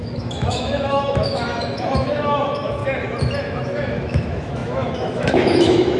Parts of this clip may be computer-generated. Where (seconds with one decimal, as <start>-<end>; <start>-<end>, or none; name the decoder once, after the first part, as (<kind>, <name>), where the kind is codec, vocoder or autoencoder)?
0.0-2.8 (autoencoder, DAC-VAE); 3.4-6.0